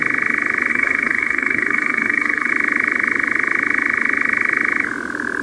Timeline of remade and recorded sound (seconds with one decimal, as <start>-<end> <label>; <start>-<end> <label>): 0.0-0.7 recorded; 0.7-2.5 remade; 2.5-5.4 recorded